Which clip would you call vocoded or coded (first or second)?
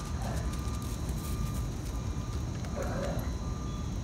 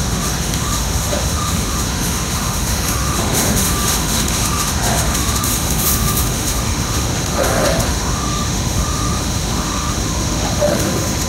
second